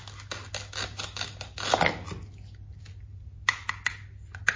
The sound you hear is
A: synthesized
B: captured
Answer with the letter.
B